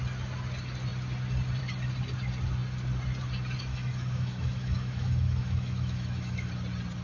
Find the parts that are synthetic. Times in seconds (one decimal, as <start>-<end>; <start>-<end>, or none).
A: 3.7-6.5